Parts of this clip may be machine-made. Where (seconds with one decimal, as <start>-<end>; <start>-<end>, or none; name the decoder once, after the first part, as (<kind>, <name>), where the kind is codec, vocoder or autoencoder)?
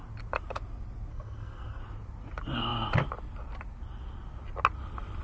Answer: 1.1-1.8 (codec, SNAC)